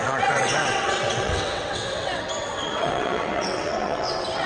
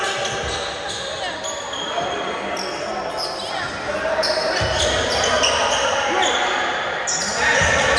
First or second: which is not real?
first